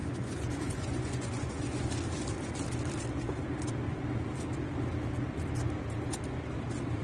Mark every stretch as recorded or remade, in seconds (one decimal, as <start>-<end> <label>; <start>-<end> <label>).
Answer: 0.0-1.9 remade; 1.9-7.0 recorded